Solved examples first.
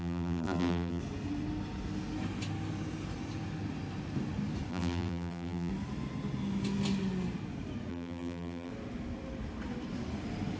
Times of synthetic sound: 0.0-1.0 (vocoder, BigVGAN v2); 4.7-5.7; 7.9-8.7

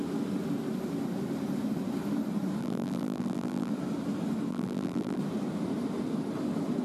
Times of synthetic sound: 2.6-3.7 (vocoder, BigVGAN v2); 4.5-5.2

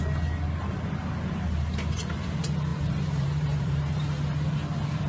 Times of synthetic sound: 2.7-4.2 (vocoder, BigVGAN v2)

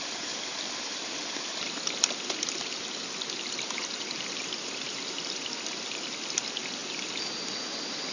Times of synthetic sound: none

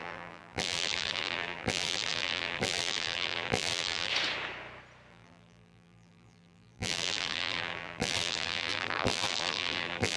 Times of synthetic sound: 0.0-4.1 (vocoder, BigVGAN v2); 5.1-10.2

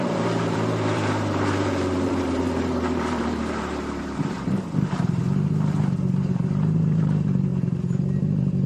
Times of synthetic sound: 0.0-5.2 (vocoder, BigVGAN v2); 5.8-7.5; 8.2-8.7

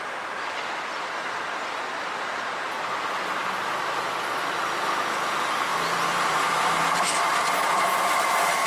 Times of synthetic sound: 0.0-5.7 (vocoder, BigVGAN v2); 6.8-8.7

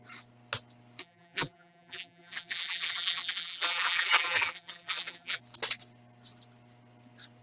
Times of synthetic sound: 1.0-5.4 (vocoder, BigVGAN v2)